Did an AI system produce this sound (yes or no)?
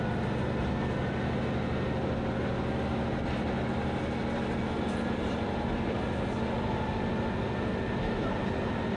no